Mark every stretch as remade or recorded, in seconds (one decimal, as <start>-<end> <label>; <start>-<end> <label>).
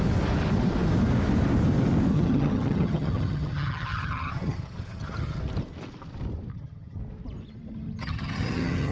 0.0-2.1 recorded; 2.1-5.4 remade; 5.4-6.5 recorded; 6.5-7.0 remade; 7.0-8.0 recorded; 8.0-8.9 remade